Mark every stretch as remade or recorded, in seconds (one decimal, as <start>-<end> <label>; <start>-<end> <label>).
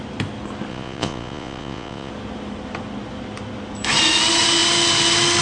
0.0-0.7 recorded; 0.7-2.1 remade; 2.1-5.4 recorded